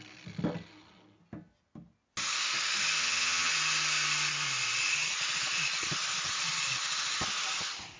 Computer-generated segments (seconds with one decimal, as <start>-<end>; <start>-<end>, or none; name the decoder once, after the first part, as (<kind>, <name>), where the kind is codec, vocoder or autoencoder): 3.0-3.5 (vocoder, HiFi-GAN)